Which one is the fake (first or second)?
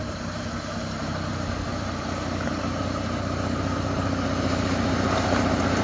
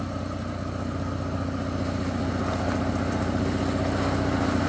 first